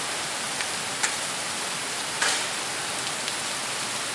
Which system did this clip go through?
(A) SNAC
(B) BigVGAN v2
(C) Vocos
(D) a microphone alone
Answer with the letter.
D